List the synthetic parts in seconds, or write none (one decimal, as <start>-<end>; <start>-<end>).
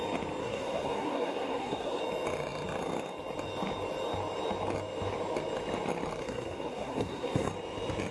0.4-2.0; 6.2-7.5